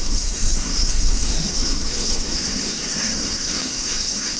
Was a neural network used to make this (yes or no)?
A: yes